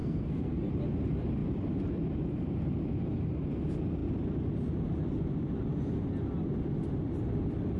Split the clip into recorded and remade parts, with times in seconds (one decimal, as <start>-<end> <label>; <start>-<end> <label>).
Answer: 0.0-0.7 remade; 0.7-7.8 recorded